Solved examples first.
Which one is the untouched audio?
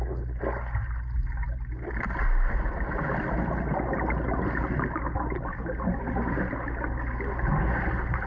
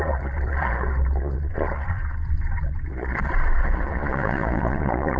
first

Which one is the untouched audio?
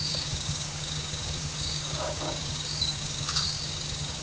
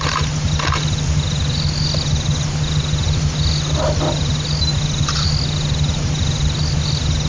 second